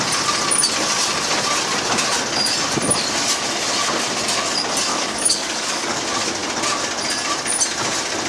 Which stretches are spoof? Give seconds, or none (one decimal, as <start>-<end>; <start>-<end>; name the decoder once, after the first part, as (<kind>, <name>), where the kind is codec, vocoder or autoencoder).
4.9-6.0 (codec, DAC)